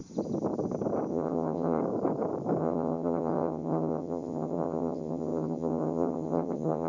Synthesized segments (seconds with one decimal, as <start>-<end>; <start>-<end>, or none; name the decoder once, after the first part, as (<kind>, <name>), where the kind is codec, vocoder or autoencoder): 1.1-1.8 (vocoder, HiFi-GAN); 2.6-6.9